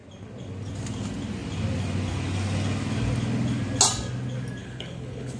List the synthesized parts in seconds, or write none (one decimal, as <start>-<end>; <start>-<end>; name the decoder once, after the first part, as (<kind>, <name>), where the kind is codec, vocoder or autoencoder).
4.6-5.4 (codec, HILCodec)